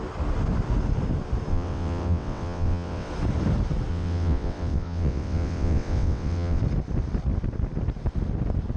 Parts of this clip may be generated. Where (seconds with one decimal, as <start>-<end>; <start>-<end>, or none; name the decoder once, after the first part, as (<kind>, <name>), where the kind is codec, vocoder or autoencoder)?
1.5-3.1 (vocoder, WaveNeXt); 3.9-6.6